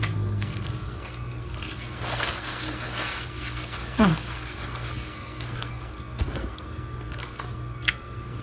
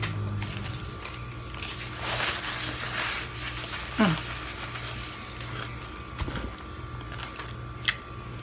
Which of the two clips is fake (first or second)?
first